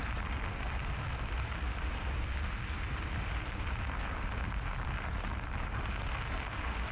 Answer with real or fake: real